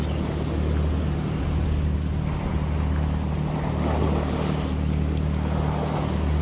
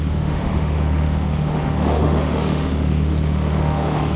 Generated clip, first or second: second